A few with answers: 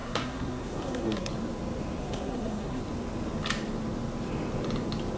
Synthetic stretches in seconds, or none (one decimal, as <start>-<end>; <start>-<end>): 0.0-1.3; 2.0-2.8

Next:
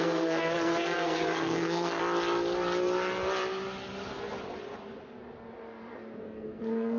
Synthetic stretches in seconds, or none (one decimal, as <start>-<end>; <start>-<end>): 0.0-2.0; 6.2-7.0

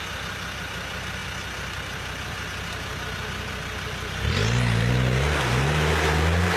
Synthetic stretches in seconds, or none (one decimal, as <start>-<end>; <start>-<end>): none

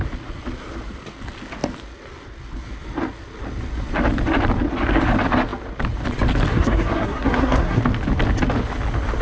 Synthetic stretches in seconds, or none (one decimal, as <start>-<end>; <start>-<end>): 6.5-7.8